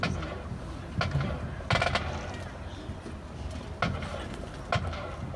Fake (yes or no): no